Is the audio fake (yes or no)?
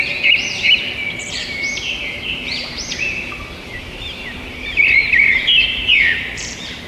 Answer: yes